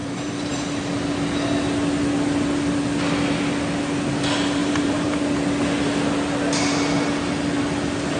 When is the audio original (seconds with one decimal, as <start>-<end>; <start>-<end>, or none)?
0.6-4.6; 5.2-8.2